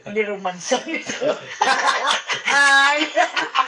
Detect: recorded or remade remade